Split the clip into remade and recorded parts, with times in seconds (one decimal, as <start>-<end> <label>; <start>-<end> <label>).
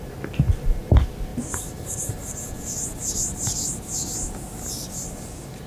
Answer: 0.0-1.3 recorded; 1.3-4.7 remade; 4.7-5.7 recorded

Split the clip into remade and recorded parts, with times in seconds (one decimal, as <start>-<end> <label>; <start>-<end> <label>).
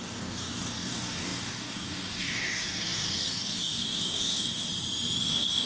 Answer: 0.0-4.7 remade; 4.7-5.3 recorded; 5.3-5.7 remade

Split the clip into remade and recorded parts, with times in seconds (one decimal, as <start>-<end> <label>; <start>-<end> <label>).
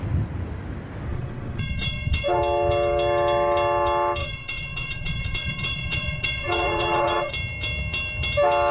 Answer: 0.0-1.1 recorded; 1.1-2.4 remade; 2.4-4.2 recorded; 4.2-7.3 remade; 7.3-8.7 recorded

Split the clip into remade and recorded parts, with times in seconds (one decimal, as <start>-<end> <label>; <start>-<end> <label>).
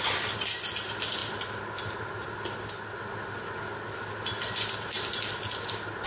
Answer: 0.0-6.1 recorded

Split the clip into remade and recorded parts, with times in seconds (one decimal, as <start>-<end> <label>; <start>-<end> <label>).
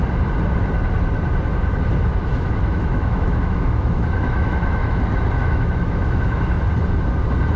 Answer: 0.0-2.3 recorded; 2.3-5.0 remade; 5.0-5.4 recorded; 5.4-6.4 remade; 6.4-7.6 recorded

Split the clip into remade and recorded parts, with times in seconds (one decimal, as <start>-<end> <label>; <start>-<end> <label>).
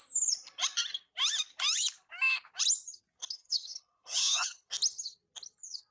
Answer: 0.0-3.2 recorded; 3.2-4.7 remade; 4.7-5.9 recorded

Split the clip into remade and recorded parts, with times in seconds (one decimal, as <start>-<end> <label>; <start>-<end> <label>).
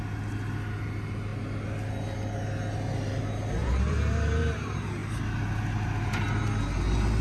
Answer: 0.0-3.6 recorded; 3.6-4.4 remade; 4.4-7.2 recorded